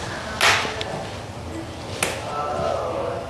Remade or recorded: recorded